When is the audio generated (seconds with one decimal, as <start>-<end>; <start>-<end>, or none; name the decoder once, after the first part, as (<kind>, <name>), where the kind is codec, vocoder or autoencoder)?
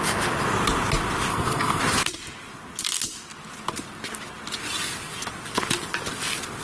1.3-1.8 (codec, SNAC)